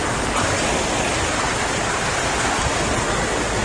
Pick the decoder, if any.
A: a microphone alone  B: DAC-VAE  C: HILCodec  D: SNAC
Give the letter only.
A